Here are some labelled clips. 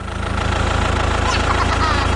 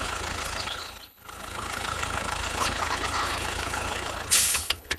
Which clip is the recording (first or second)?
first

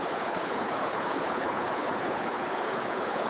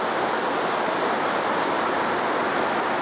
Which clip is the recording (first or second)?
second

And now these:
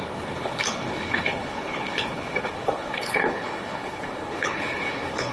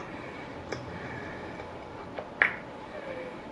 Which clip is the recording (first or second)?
second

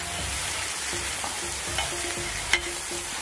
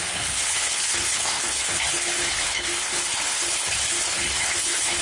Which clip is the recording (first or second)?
first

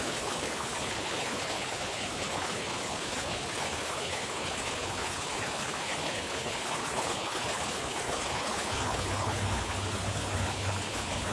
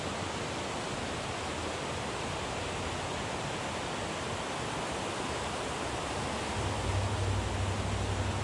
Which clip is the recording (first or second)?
second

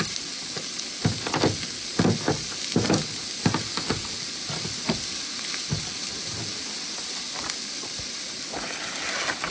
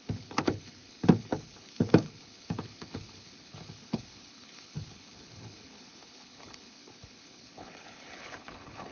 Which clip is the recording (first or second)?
first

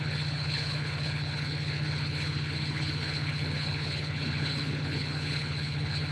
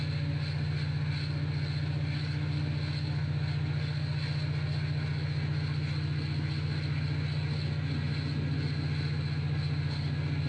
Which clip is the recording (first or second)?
second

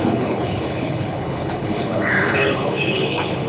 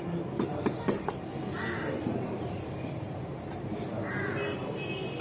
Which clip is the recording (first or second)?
second